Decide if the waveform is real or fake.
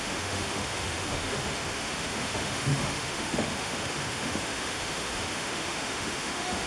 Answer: fake